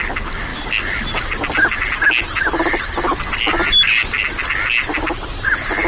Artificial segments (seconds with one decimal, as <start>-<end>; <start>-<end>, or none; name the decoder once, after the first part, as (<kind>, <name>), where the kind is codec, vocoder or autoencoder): none